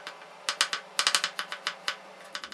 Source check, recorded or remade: recorded